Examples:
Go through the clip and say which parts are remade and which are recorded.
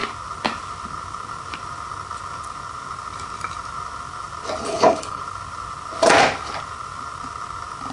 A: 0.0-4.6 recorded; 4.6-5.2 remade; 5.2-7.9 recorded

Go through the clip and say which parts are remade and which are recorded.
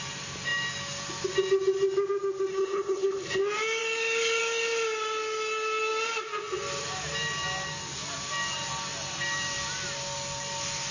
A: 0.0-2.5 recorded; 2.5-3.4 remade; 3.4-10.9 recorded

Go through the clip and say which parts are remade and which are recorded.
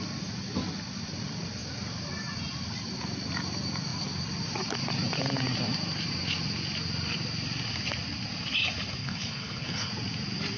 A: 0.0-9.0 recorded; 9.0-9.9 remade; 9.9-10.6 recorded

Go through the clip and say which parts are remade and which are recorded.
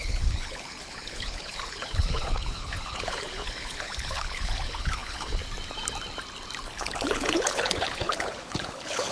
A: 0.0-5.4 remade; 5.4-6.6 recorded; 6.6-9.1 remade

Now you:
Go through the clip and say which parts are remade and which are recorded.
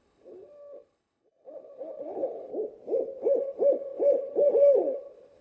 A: 0.0-2.5 remade; 2.5-3.2 recorded; 3.2-5.4 remade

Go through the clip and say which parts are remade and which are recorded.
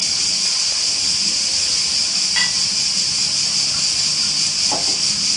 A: 0.0-5.4 recorded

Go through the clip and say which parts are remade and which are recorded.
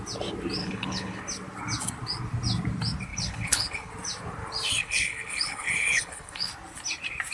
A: 0.0-0.6 recorded; 0.6-1.2 remade; 1.2-3.1 recorded; 3.1-3.9 remade; 3.9-4.8 recorded; 4.8-6.5 remade; 6.5-7.3 recorded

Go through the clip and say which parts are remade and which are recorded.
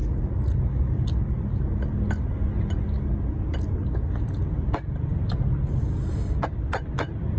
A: 0.0-7.4 recorded